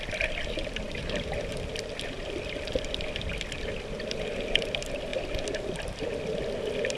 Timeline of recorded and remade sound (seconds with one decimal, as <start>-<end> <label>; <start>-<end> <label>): 0.0-7.0 recorded